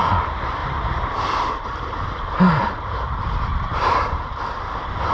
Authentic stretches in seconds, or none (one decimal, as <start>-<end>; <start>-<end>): 0.0-0.6; 3.0-3.7; 4.4-5.1